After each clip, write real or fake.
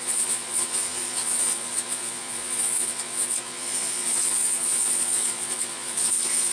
fake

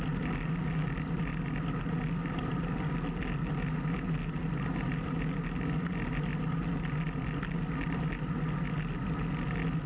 real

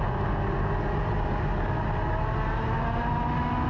real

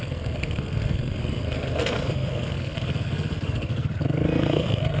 fake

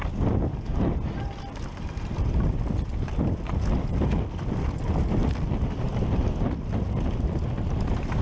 real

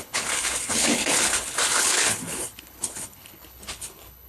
fake